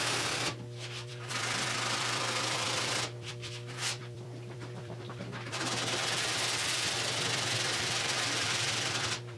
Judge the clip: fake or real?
fake